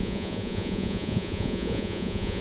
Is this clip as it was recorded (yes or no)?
no